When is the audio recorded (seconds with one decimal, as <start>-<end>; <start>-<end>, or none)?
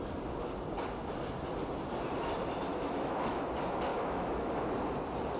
0.0-2.7; 3.5-3.9; 4.7-5.4